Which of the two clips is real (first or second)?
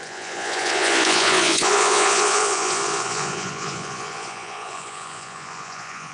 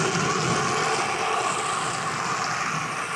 second